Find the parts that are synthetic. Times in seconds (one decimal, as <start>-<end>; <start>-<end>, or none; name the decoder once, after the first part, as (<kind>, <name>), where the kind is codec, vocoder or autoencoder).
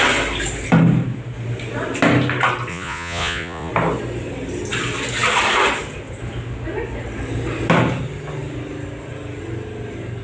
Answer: 2.7-3.7 (vocoder, Vocos)